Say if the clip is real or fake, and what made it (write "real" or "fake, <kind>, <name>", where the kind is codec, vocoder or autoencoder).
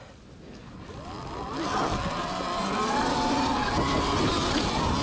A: real